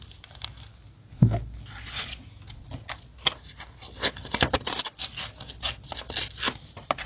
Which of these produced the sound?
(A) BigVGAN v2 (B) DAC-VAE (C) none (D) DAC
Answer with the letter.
C